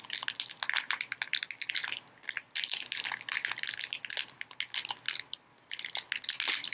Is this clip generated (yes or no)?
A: no